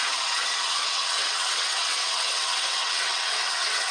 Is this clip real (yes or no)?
no